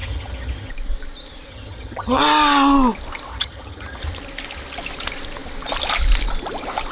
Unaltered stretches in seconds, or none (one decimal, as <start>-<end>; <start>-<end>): 0.7-1.5; 2.2-3.3; 4.0-6.9

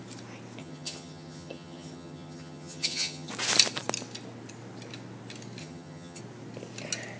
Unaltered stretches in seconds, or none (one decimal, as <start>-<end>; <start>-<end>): 0.0-0.6; 3.3-5.6; 6.2-7.2

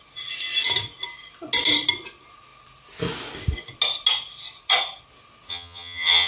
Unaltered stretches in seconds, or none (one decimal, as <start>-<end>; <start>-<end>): 0.0-5.5

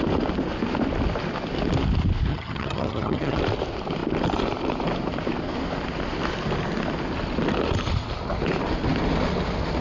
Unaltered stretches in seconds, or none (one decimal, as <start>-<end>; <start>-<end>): 0.0-2.3; 3.4-9.8